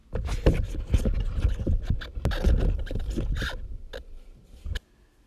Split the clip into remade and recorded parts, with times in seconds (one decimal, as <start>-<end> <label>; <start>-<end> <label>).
0.0-5.3 recorded